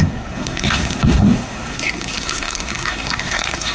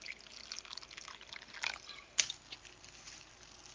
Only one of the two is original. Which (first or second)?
second